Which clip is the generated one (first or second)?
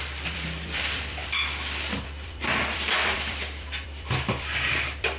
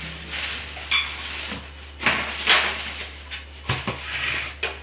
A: first